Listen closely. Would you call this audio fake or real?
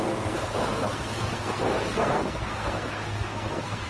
fake